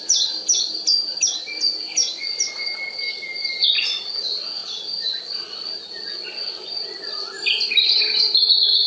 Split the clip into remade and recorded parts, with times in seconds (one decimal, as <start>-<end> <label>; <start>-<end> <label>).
0.0-8.9 recorded